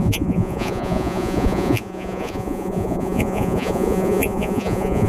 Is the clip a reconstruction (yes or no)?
yes